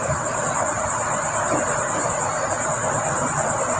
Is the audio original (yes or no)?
yes